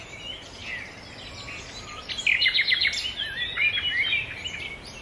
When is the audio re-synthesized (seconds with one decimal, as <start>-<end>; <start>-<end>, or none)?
none